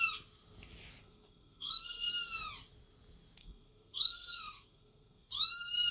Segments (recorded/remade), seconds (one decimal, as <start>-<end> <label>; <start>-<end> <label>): 0.0-1.0 recorded; 1.0-2.1 remade; 2.1-3.4 recorded; 3.4-5.3 remade; 5.3-5.9 recorded